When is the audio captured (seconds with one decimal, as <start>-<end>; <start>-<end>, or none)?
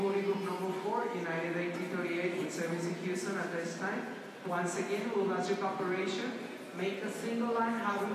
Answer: 0.0-8.1